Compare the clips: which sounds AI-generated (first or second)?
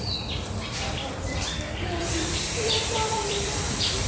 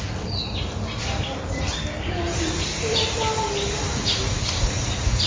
first